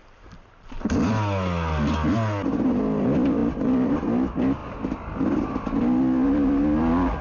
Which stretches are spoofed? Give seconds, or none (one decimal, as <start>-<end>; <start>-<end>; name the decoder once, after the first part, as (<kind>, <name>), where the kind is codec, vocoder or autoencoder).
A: none

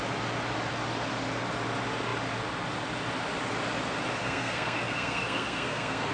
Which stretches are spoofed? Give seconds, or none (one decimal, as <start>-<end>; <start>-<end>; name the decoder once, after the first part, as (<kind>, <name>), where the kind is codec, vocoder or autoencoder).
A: 4.2-6.1 (codec, SNAC)

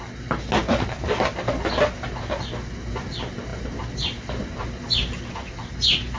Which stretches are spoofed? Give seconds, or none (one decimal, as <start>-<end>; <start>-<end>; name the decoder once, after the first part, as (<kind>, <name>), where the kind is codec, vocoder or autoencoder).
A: none

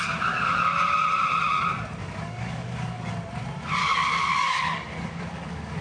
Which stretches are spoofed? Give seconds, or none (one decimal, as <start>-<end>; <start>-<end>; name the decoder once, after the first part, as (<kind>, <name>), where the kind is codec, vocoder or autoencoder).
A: 2.0-3.1 (codec, DAC); 3.8-5.8

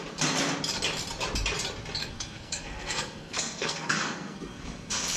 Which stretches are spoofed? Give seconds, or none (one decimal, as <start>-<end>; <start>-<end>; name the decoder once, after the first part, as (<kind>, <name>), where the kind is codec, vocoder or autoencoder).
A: 2.0-5.2 (codec, SNAC)